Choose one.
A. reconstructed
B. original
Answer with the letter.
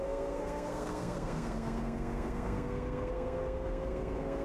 A